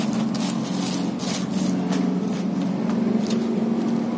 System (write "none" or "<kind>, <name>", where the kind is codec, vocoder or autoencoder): none